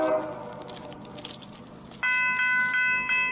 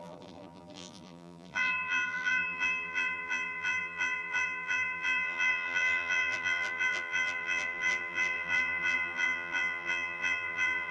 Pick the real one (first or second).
first